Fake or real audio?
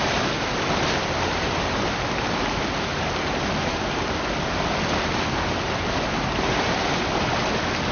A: real